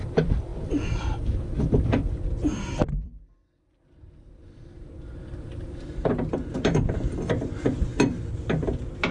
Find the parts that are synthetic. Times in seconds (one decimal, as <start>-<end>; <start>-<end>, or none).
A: 0.0-7.9; 8.4-9.1